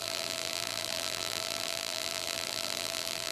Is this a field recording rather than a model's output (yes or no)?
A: no